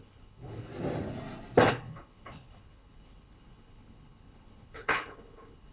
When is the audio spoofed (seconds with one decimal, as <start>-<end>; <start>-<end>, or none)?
0.0-0.7; 1.7-5.7